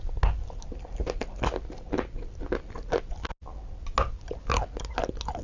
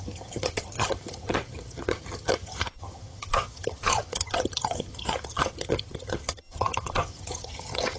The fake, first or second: second